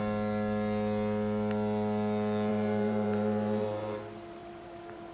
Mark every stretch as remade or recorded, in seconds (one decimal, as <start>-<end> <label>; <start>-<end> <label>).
0.0-2.5 recorded; 2.5-4.0 remade; 4.0-4.4 recorded; 4.4-5.1 remade